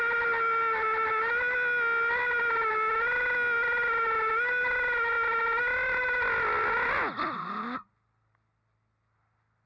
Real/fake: real